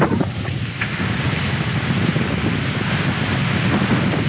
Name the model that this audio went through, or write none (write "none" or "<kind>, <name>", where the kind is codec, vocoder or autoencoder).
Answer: none